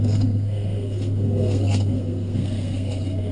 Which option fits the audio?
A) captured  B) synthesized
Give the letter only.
B